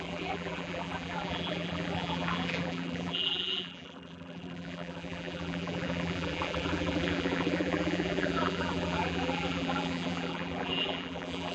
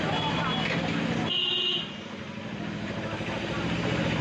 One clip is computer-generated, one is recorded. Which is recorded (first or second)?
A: second